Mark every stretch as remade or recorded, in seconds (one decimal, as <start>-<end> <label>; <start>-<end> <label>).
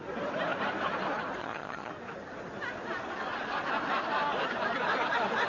0.0-1.4 recorded; 1.4-1.9 remade; 1.9-5.5 recorded